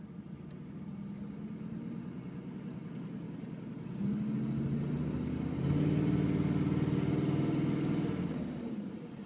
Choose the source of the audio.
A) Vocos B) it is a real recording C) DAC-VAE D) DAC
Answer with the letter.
B